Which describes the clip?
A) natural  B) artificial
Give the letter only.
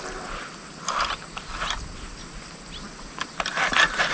A